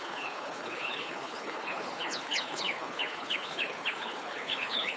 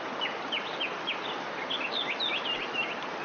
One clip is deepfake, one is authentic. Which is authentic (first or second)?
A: second